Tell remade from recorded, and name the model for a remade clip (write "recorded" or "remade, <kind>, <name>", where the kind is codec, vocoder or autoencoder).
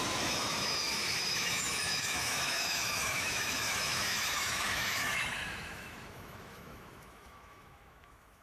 remade, autoencoder, DAC-VAE